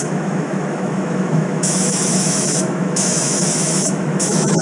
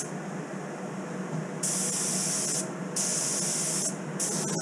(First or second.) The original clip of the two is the second